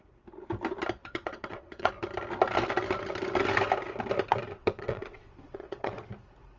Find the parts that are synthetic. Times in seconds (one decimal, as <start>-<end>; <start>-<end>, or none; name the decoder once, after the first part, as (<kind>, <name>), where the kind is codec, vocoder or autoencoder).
1.0-1.9 (vocoder, WaveNeXt); 4.3-6.1